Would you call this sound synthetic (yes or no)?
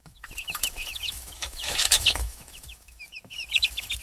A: yes